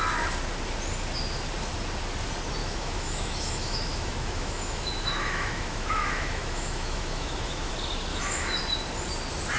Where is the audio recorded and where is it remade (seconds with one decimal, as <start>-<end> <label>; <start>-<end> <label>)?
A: 0.0-2.6 recorded; 2.6-7.7 remade; 7.7-8.1 recorded; 8.1-8.6 remade; 8.6-9.6 recorded

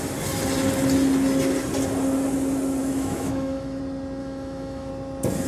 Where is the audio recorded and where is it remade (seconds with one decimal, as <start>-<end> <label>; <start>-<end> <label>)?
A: 0.0-2.8 recorded; 2.8-3.8 remade; 3.8-4.2 recorded; 4.2-4.9 remade; 4.9-5.5 recorded

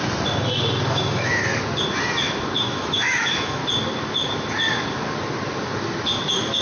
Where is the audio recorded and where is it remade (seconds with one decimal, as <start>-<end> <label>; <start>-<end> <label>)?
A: 0.0-0.9 recorded; 0.9-1.4 remade; 1.4-2.6 recorded; 2.6-3.6 remade; 3.6-6.6 recorded